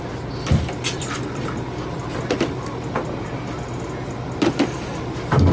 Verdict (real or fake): real